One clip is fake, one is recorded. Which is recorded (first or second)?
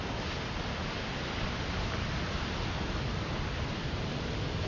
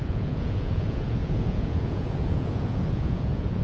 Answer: first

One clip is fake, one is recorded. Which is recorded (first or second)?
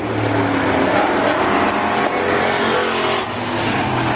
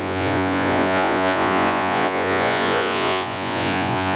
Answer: first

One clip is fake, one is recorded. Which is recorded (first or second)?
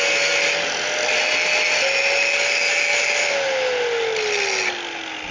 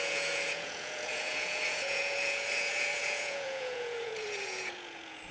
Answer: first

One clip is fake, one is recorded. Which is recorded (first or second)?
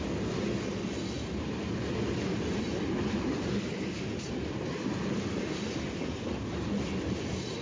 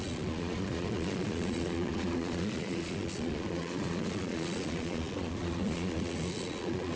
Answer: first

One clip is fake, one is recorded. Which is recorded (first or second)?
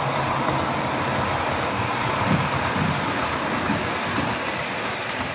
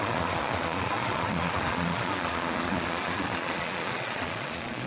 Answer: first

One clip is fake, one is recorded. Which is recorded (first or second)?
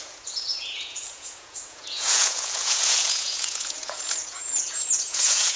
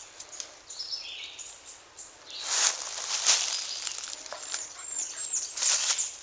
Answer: second